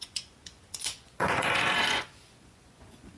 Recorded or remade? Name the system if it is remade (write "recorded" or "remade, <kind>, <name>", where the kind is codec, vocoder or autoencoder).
remade, vocoder, Vocos